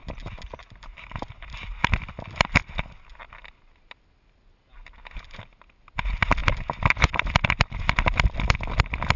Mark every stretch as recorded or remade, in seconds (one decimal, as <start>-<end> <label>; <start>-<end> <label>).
0.0-9.2 recorded